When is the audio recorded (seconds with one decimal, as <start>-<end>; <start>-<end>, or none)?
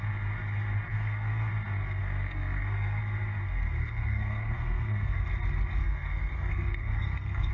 0.0-0.9; 1.5-2.0; 3.0-3.8; 5.2-5.8